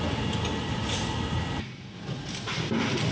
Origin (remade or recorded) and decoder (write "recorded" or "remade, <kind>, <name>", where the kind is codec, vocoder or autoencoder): recorded